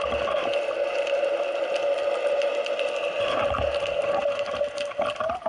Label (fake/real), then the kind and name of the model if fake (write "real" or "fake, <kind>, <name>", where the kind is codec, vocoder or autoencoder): real